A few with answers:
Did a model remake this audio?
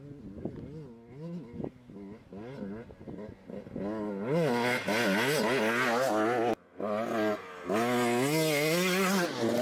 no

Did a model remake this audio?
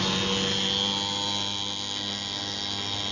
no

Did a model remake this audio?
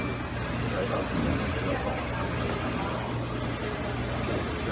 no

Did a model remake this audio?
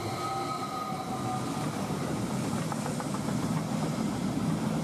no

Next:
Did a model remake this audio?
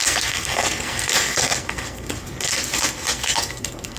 yes